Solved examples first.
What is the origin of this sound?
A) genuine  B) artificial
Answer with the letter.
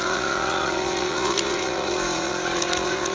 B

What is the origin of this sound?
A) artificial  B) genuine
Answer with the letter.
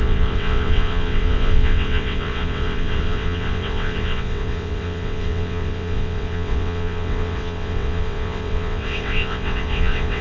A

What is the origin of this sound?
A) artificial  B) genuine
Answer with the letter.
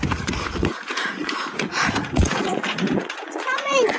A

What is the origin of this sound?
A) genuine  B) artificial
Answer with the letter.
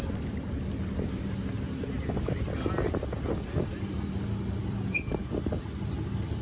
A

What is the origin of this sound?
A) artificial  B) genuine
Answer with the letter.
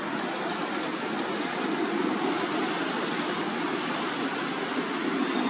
B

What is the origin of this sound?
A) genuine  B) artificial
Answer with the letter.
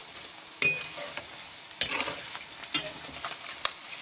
A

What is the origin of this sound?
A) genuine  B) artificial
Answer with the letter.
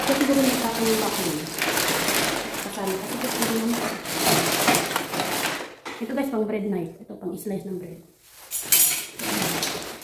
A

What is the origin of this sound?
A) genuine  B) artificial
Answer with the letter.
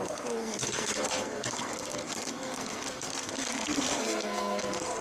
B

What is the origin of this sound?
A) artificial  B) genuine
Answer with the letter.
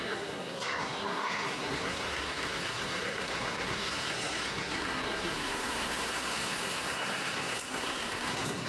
A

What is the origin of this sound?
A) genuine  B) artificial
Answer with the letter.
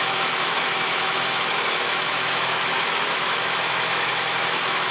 B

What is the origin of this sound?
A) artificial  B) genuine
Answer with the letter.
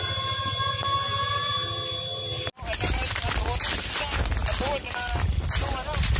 B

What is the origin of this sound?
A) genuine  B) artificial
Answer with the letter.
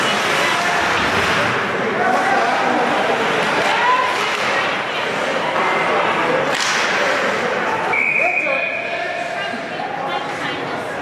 A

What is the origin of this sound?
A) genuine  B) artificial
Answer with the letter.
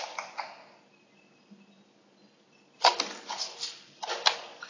A